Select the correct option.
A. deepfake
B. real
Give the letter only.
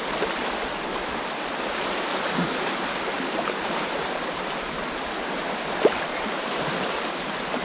B